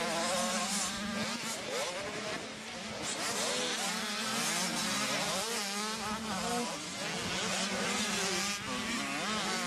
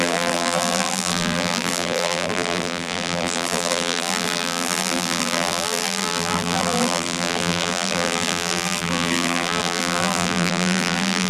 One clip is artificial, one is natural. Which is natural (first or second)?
first